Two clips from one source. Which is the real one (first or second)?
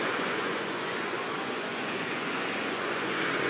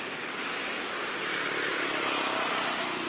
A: second